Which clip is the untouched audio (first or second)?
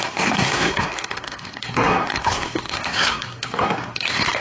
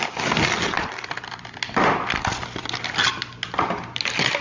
second